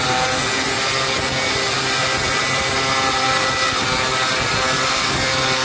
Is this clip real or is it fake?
real